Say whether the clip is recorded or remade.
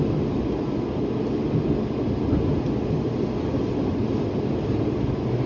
recorded